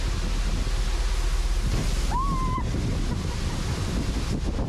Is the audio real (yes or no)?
yes